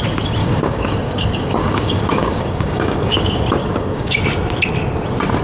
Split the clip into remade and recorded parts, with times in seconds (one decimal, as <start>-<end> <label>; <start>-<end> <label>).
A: 0.0-0.4 recorded; 0.4-3.2 remade; 3.2-3.6 recorded; 3.6-4.2 remade; 4.2-5.4 recorded